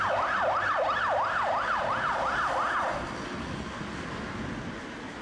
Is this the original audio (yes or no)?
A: yes